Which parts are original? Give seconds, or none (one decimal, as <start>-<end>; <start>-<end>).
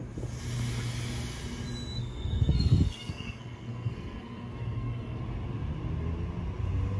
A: 0.0-2.0; 5.2-7.0